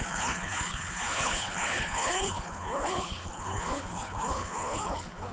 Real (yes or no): no